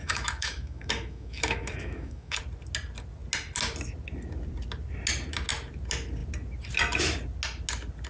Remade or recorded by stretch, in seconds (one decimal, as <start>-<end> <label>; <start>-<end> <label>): 0.0-2.4 remade; 2.4-8.1 recorded